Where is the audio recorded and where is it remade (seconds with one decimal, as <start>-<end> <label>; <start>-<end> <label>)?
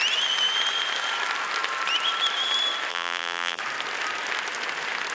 0.0-2.9 recorded; 2.9-3.6 remade; 3.6-5.1 recorded